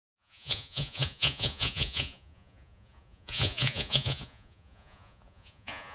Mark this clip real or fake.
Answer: fake